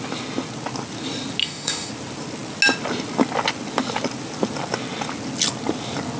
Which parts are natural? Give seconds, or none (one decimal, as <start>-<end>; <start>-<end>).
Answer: 0.0-1.4; 1.9-6.2

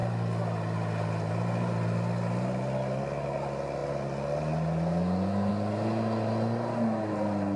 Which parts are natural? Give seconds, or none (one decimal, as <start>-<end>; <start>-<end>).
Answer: 0.0-7.6

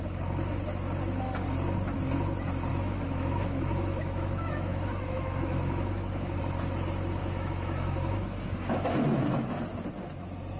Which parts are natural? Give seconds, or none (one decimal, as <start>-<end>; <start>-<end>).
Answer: 0.0-2.7; 6.4-7.2; 9.5-10.6

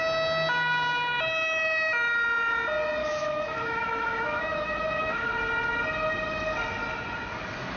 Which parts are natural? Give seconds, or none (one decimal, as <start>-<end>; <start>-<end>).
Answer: 0.0-3.0; 5.3-7.8

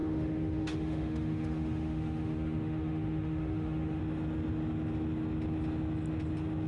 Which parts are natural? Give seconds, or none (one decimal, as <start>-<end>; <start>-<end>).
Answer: 4.0-6.7